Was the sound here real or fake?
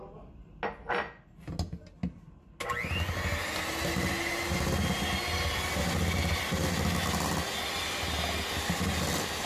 real